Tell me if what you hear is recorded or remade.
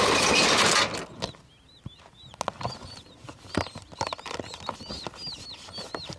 recorded